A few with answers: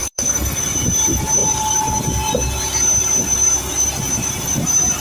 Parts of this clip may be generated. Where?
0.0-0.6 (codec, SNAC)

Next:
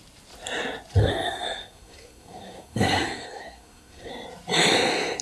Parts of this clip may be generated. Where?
1.0-4.1 (codec, SNAC)

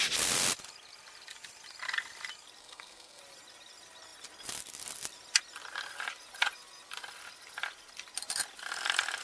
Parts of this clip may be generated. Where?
2.6-3.2 (codec, SNAC)

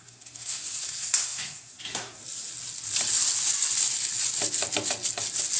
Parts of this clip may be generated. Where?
0.0-2.2 (codec, SNAC)